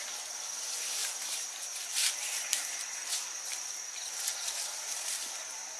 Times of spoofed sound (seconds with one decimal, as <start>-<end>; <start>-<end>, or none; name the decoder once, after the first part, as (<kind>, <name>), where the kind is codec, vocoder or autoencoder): 0.0-5.8 (vocoder, BigVGAN v2)